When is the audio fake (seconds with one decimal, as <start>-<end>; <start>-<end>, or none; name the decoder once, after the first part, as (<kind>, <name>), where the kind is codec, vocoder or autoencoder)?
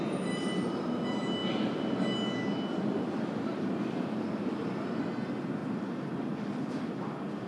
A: 5.6-6.9 (vocoder, BigVGAN v2)